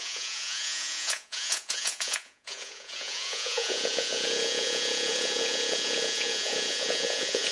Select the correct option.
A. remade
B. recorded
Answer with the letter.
A